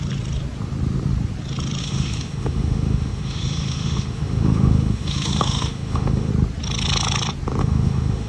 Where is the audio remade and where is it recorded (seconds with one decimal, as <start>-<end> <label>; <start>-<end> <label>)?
0.0-1.8 recorded; 1.8-6.3 remade; 6.3-7.6 recorded; 7.6-8.3 remade